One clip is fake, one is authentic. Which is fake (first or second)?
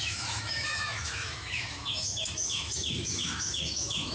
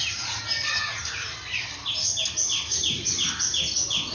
first